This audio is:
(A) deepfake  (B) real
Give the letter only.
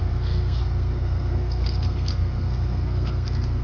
A